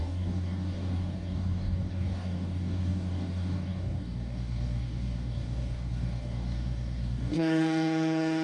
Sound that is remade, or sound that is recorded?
remade